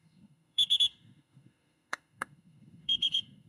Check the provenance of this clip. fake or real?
fake